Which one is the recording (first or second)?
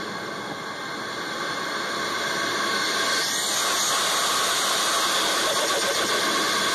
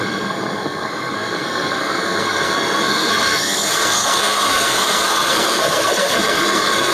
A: first